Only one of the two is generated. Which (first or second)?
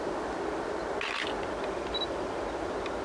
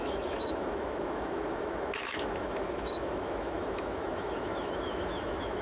second